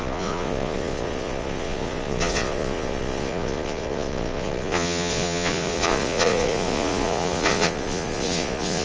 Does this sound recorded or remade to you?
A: remade